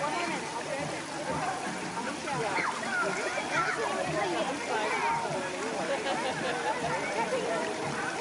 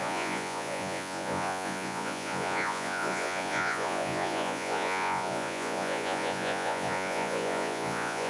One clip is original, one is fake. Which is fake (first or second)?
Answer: second